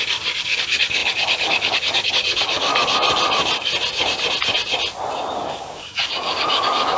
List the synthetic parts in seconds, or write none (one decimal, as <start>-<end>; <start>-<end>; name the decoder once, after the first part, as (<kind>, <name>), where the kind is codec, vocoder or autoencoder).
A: 0.0-2.7 (codec, DAC); 5.3-7.0